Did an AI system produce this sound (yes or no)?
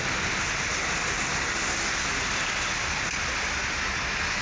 no